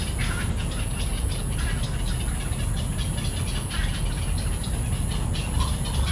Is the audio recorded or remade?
recorded